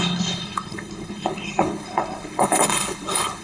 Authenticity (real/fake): fake